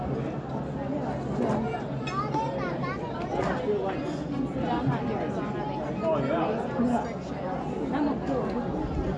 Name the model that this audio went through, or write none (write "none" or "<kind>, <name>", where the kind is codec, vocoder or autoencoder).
none